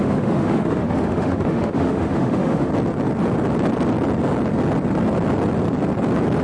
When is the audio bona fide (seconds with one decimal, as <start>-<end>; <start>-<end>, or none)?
2.7-6.4